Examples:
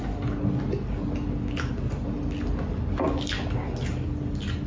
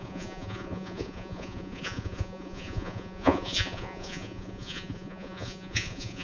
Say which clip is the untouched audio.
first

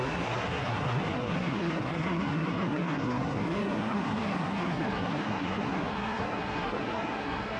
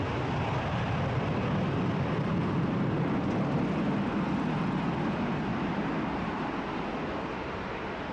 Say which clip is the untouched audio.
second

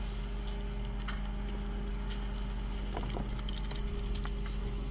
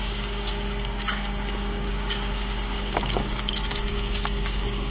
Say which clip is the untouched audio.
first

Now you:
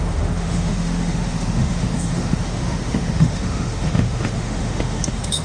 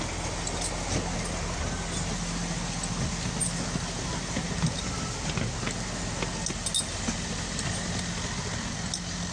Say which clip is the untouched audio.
second